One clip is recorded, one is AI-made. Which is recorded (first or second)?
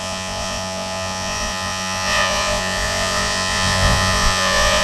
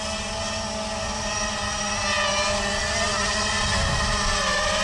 second